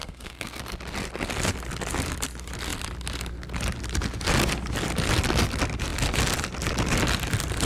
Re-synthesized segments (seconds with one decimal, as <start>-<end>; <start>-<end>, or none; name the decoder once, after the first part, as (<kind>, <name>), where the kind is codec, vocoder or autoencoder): 0.0-0.6 (codec, SNAC)